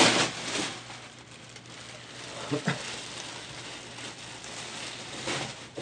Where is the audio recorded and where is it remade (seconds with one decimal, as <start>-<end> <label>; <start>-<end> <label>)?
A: 0.0-5.8 recorded